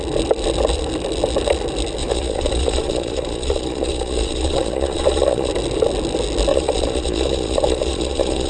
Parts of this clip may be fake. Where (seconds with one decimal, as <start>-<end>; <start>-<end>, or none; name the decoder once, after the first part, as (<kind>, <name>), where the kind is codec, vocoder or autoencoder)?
2.0-5.5 (vocoder, Vocos); 6.5-8.5